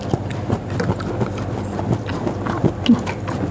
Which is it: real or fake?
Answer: real